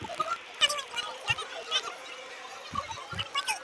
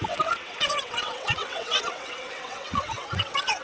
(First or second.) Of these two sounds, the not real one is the second